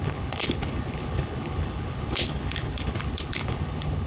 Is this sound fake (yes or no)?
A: yes